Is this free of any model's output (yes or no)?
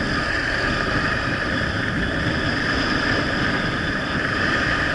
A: no